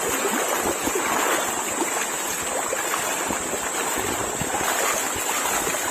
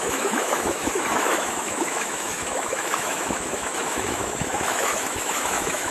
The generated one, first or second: second